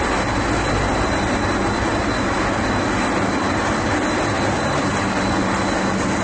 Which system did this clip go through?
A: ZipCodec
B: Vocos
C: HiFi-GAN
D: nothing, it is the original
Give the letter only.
D